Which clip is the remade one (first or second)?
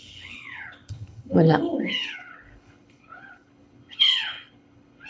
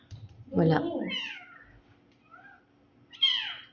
first